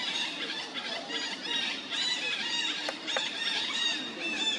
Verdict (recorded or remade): remade